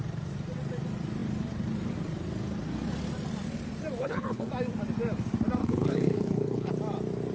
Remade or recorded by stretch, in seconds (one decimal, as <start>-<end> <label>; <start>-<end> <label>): 0.0-4.0 recorded; 4.0-4.5 remade; 4.5-5.6 recorded; 5.6-6.7 remade; 6.7-7.3 recorded

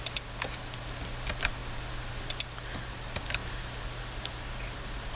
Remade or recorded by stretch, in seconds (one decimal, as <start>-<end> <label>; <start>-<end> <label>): 0.0-5.2 recorded

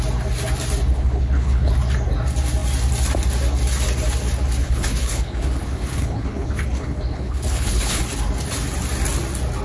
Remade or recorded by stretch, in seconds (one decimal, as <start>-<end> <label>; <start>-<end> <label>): 0.0-0.9 recorded; 0.9-1.7 remade; 1.7-4.6 recorded; 4.6-8.0 remade; 8.0-9.6 recorded

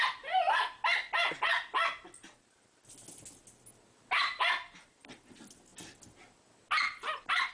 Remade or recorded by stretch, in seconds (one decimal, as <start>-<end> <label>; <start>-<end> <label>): 0.0-7.5 recorded

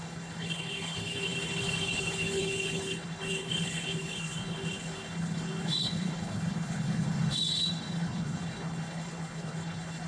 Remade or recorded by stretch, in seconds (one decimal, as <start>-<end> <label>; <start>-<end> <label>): 0.0-10.1 remade

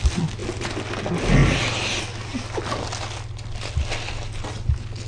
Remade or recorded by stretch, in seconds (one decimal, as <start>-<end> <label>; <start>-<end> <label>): 0.0-5.1 recorded